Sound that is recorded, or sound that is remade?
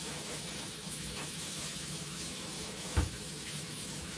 remade